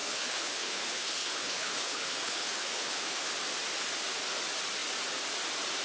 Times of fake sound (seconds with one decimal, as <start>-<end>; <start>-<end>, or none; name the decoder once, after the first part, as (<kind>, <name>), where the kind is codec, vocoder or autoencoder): 0.0-3.3 (codec, HILCodec)